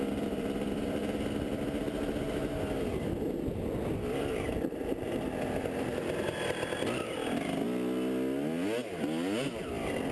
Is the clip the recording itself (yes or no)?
yes